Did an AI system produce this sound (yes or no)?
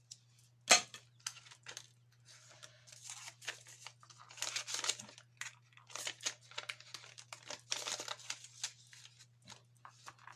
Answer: no